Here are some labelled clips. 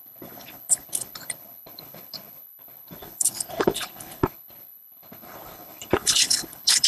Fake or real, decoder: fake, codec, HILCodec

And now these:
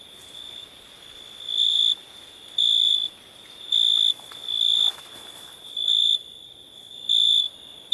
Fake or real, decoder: real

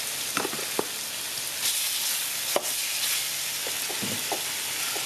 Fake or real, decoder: real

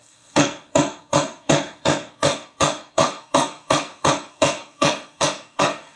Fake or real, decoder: fake, codec, SNAC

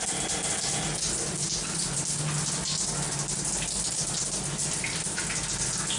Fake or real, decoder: real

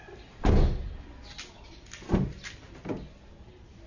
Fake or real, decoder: real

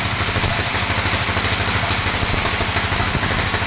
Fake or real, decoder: real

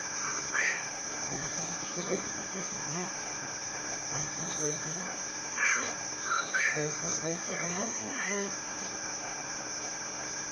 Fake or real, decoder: fake, codec, SNAC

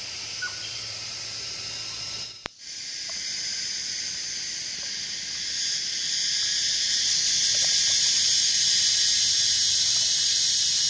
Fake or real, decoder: real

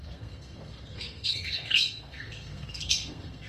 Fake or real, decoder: fake, codec, SNAC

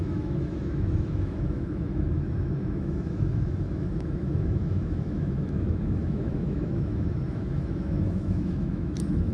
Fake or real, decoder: fake, autoencoder, DAC-VAE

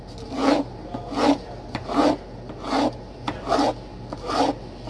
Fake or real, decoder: real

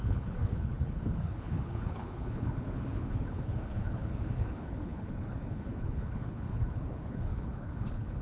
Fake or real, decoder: fake, codec, HILCodec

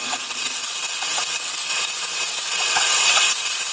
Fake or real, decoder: fake, vocoder, WaveNeXt